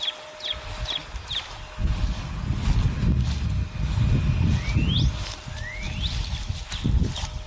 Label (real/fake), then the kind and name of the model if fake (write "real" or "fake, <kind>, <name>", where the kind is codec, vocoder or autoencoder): real